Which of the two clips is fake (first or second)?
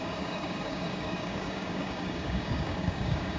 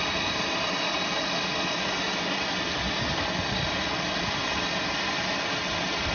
first